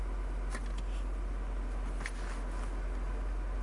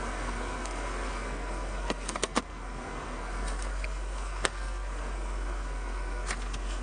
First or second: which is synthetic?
second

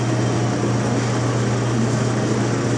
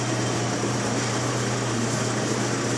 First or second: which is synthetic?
second